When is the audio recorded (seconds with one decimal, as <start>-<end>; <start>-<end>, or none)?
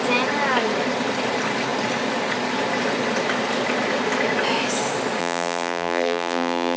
0.0-5.2